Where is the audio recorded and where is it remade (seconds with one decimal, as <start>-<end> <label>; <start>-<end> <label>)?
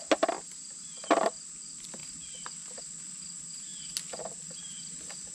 0.0-5.3 recorded